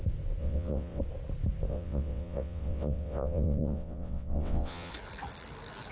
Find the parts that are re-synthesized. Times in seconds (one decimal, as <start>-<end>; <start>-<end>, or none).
0.4-1.0; 1.7-4.9